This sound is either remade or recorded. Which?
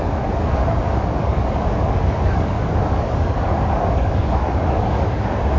remade